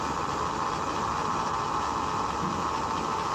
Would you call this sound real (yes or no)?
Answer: yes